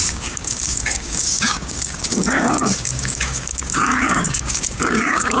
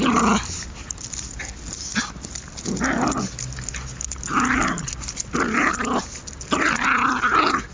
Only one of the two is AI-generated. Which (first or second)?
first